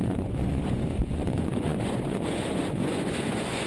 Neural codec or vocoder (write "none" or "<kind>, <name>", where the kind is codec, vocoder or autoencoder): vocoder, Vocos